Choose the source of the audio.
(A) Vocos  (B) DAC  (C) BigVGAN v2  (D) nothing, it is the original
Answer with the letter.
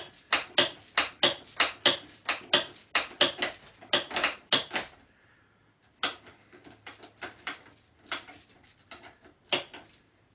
D